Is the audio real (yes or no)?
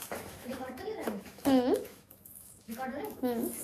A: no